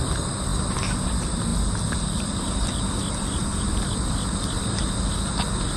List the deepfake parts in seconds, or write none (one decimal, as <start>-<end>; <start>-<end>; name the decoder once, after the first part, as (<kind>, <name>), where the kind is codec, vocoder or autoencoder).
none